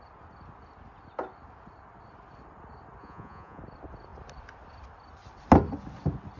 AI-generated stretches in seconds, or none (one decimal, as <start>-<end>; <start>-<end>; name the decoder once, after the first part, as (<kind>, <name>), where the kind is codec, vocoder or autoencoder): 3.0-3.6 (vocoder, Vocos)